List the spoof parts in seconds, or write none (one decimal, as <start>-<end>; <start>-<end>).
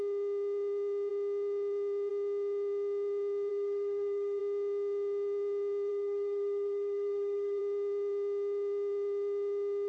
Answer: 3.5-4.4; 5.9-7.6